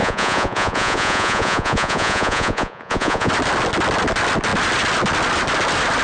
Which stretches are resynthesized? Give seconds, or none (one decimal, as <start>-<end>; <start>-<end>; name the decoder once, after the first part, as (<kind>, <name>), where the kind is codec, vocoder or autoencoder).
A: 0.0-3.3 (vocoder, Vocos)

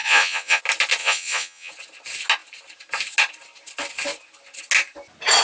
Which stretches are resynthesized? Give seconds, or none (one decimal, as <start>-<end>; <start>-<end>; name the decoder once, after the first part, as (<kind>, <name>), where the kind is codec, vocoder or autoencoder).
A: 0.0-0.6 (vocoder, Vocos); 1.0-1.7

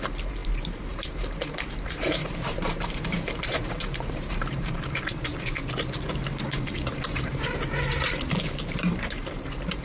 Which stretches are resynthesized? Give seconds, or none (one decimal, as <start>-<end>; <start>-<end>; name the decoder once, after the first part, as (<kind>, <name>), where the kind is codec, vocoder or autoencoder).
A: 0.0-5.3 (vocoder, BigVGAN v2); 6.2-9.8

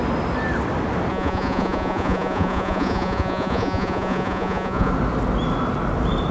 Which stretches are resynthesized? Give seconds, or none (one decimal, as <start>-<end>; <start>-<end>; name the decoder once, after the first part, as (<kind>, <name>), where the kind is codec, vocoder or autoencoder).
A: 1.1-4.9 (vocoder, Vocos)